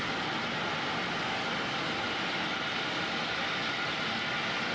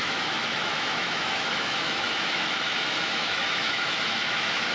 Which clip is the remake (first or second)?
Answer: second